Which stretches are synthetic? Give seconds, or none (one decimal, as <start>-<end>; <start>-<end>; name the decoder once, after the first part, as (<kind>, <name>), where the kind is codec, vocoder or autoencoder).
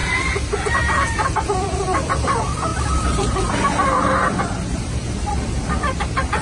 0.6-6.4 (vocoder, BigVGAN v2)